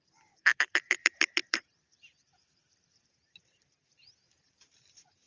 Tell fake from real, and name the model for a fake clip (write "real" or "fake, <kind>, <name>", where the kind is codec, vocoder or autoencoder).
fake, vocoder, BigVGAN v2